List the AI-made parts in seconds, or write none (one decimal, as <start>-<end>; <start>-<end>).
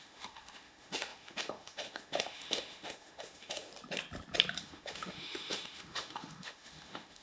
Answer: 0.0-3.7; 4.6-7.2